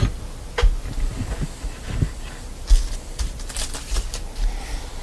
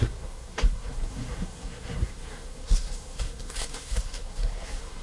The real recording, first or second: first